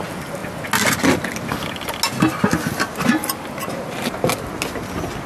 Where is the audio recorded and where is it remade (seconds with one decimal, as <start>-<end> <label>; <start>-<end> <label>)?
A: 0.0-5.3 recorded